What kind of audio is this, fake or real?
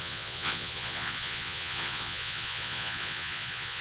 fake